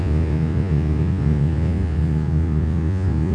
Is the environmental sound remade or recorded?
remade